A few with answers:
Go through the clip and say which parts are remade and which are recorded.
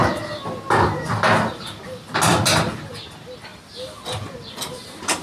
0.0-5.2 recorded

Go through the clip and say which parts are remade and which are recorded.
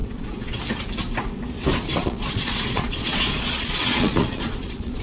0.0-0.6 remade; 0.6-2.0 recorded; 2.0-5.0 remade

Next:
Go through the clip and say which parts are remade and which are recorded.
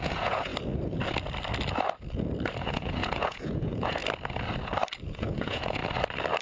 0.0-0.5 remade; 0.5-2.6 recorded; 2.6-4.0 remade; 4.0-5.1 recorded; 5.1-5.8 remade; 5.8-6.4 recorded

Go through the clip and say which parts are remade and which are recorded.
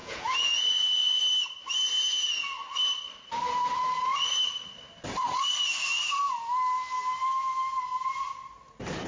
0.0-1.2 remade; 1.2-9.1 recorded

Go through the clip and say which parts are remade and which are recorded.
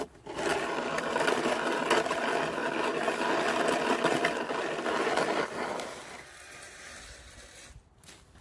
0.0-8.4 recorded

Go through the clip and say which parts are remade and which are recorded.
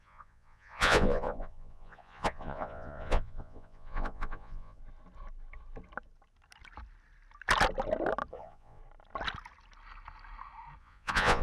0.0-4.8 remade; 4.8-8.3 recorded; 8.3-8.8 remade; 8.8-10.8 recorded; 10.8-11.4 remade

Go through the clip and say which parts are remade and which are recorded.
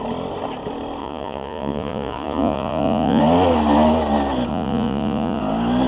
0.0-1.0 recorded; 1.0-3.2 remade; 3.2-4.5 recorded; 4.5-5.4 remade; 5.4-5.9 recorded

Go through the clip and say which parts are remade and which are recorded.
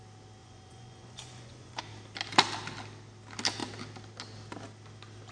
0.0-0.4 recorded; 0.4-1.8 remade; 1.8-5.3 recorded